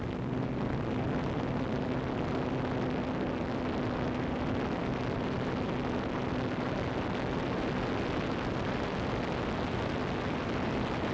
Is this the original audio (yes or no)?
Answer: yes